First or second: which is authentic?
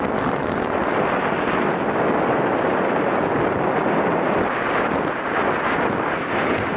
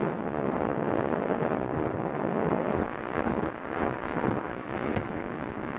first